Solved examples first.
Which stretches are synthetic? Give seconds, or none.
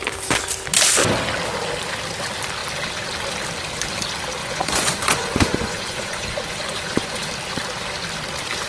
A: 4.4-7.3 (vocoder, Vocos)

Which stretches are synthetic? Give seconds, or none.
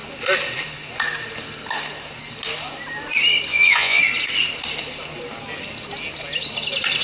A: 3.5-4.0 (vocoder, Vocos)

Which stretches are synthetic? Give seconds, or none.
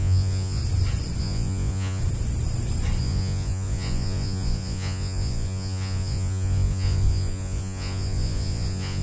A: 0.0-0.6 (vocoder, Vocos); 1.2-2.0; 3.0-9.0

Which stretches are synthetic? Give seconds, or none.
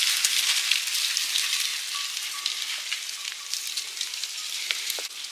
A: none